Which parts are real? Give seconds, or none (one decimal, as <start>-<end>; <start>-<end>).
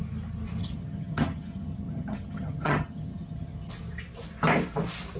0.0-0.6; 3.7-5.2